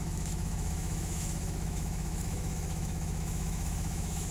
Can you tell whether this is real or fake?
fake